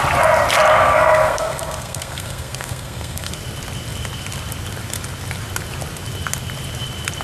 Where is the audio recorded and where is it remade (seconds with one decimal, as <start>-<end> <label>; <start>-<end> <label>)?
0.0-0.7 recorded; 0.7-3.3 remade; 3.3-7.2 recorded